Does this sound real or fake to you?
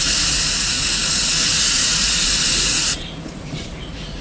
fake